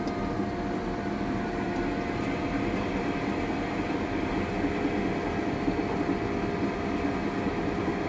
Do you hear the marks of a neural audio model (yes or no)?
no